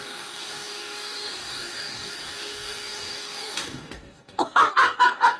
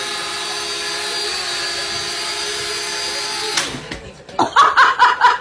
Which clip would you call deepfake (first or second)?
first